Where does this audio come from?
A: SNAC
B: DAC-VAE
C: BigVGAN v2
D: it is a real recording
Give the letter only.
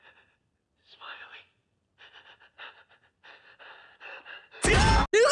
D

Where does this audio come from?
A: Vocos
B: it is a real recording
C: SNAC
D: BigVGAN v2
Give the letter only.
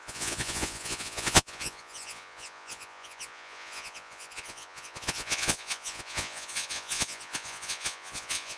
A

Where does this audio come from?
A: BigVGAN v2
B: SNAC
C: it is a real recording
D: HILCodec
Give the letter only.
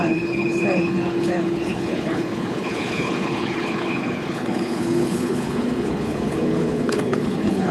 D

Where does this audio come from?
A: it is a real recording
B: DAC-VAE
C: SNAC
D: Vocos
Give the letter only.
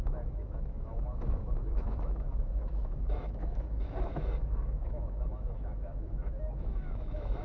B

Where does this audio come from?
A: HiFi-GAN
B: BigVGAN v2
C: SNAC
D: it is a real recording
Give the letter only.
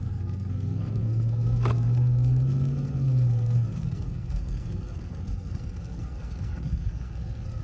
C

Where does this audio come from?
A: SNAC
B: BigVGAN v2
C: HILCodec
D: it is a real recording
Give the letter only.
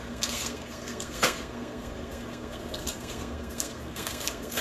A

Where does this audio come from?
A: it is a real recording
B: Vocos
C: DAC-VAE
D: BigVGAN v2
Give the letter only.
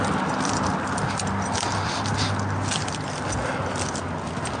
A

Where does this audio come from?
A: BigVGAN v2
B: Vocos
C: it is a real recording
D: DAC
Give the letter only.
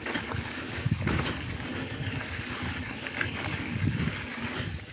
D